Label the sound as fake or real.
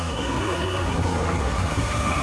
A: fake